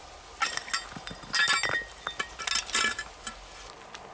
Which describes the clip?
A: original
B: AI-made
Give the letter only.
A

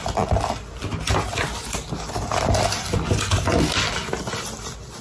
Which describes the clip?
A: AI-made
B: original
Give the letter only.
B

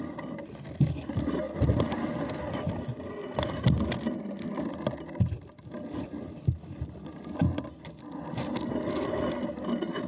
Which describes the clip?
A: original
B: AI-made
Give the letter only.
A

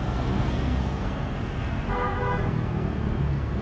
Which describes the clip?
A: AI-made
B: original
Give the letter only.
A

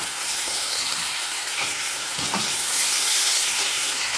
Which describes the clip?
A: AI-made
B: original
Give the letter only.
A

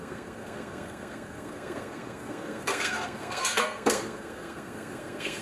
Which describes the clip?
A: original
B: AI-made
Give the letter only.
B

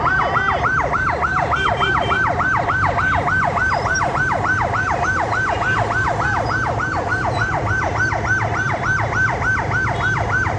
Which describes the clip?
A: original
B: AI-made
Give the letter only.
A